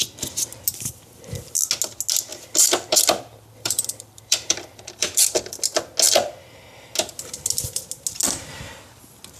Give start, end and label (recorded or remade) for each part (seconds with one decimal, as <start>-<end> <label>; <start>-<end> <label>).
0.0-2.3 recorded; 2.3-5.2 remade; 5.2-9.4 recorded